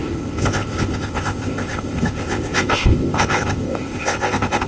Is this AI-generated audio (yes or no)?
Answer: yes